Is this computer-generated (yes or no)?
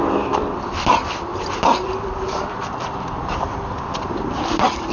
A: yes